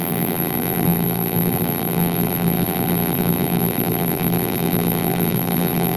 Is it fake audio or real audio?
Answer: fake